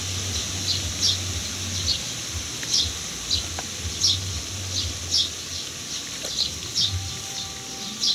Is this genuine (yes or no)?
yes